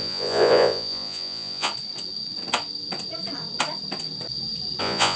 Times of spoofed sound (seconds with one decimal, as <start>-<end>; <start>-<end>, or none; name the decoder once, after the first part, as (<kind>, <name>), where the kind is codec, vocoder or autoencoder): 0.0-1.7 (vocoder, Vocos); 4.8-5.2